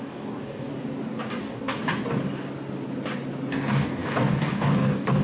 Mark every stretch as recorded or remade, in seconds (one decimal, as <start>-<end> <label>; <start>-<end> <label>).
0.0-0.7 remade; 0.7-1.4 recorded; 1.4-1.8 remade; 1.8-3.5 recorded; 3.5-5.2 remade